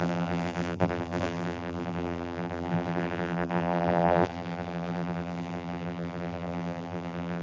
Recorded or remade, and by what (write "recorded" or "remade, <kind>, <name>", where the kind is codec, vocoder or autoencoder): remade, vocoder, BigVGAN v2